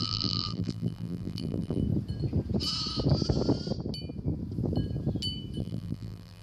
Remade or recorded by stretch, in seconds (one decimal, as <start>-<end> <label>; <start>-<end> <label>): 0.0-1.8 remade; 1.8-5.6 recorded; 5.6-6.4 remade